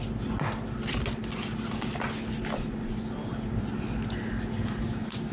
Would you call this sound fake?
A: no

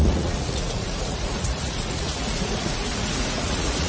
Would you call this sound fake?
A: yes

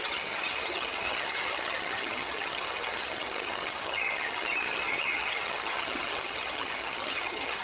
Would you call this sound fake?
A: yes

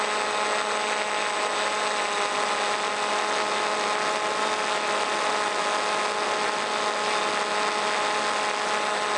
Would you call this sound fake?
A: no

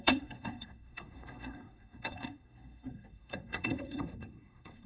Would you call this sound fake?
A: yes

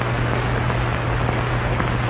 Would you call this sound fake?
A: no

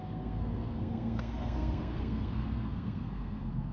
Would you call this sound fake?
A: yes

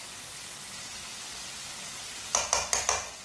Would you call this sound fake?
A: no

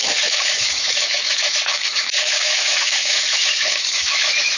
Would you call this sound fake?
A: yes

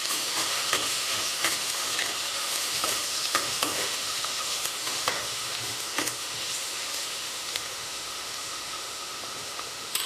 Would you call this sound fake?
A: yes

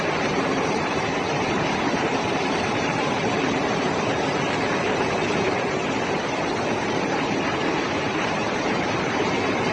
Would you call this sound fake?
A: yes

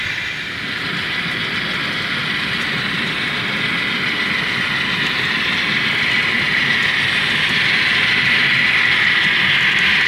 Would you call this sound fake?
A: no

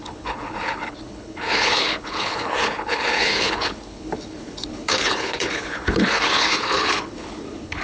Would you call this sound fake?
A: yes